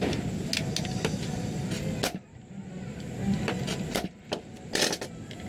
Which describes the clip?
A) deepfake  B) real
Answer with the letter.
B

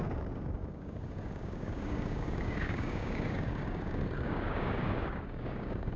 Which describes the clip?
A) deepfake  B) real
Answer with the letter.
A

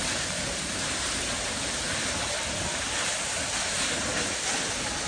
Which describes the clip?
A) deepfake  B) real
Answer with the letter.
B